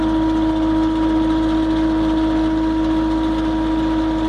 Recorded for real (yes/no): yes